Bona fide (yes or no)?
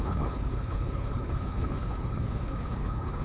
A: no